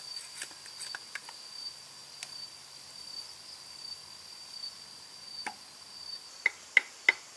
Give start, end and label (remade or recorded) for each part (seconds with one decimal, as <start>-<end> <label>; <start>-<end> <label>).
0.0-7.4 recorded